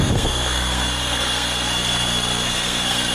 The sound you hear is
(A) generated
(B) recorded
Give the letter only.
A